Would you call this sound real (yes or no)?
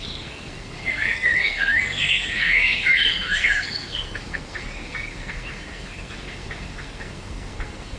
no